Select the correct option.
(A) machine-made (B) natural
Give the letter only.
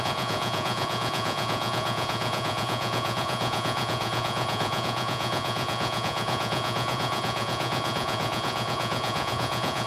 A